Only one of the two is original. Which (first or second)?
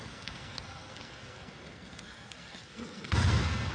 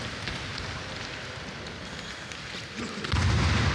second